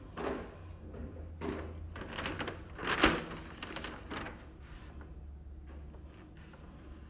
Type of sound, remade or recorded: recorded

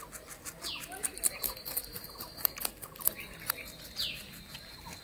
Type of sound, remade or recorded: recorded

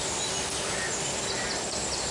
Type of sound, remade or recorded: recorded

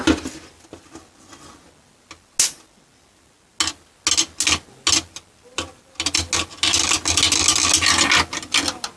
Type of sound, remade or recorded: recorded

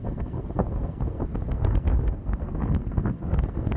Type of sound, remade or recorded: remade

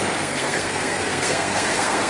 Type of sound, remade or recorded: remade